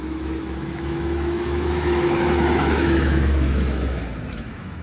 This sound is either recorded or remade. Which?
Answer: remade